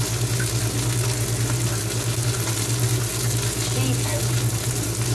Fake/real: real